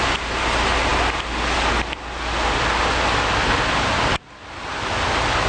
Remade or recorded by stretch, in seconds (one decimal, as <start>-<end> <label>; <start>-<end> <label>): 0.0-5.5 recorded